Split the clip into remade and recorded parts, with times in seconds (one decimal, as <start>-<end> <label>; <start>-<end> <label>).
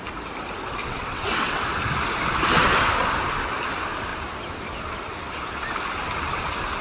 0.0-0.8 recorded; 0.8-1.6 remade; 1.6-6.8 recorded